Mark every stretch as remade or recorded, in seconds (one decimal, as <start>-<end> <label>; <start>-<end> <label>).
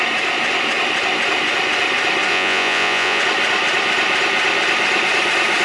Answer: 0.0-2.3 recorded; 2.3-3.2 remade; 3.2-5.6 recorded